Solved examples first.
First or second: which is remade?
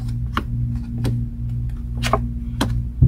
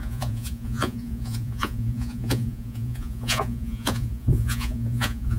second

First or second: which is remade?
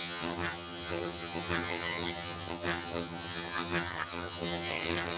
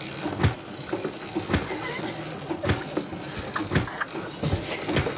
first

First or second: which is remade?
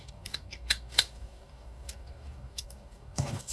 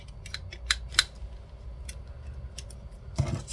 first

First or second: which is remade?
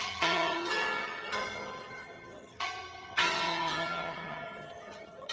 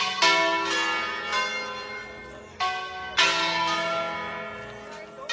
first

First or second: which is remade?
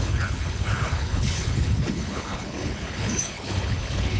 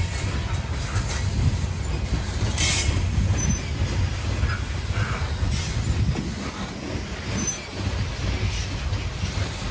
first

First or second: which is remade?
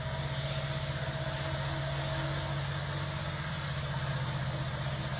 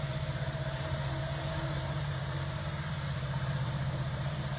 second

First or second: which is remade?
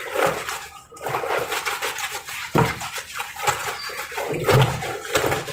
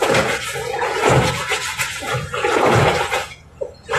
second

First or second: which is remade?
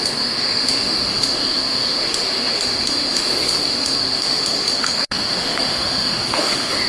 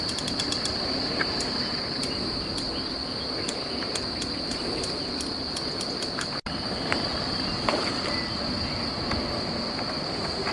first